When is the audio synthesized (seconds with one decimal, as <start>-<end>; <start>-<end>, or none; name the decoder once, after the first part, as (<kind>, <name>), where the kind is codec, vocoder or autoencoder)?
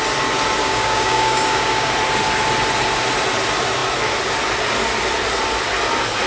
0.6-1.9 (codec, DAC)